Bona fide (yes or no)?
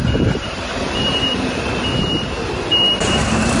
no